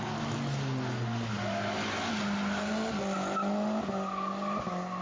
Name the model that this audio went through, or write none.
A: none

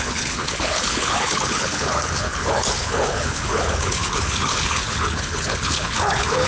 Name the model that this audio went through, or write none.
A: codec, HILCodec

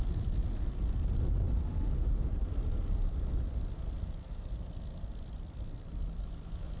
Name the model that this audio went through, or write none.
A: none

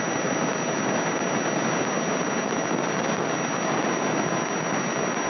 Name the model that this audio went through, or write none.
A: none